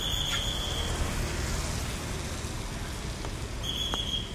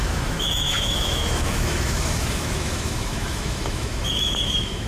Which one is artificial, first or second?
second